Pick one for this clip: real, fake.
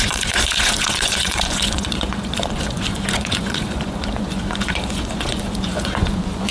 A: fake